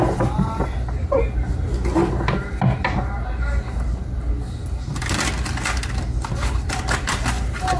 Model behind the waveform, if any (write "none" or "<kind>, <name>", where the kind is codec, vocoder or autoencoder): none